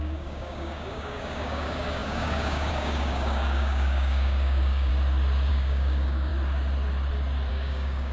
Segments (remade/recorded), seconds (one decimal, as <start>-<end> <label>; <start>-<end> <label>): 0.0-4.9 remade; 4.9-5.5 recorded; 5.5-6.3 remade; 6.3-7.5 recorded; 7.5-8.1 remade